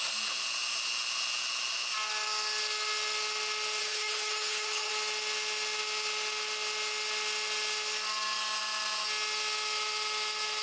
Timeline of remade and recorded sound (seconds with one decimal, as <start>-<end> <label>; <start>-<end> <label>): 0.0-3.8 recorded; 3.8-4.9 remade; 4.9-10.6 recorded